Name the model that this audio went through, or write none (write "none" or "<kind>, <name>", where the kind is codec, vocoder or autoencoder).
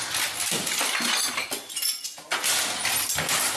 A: none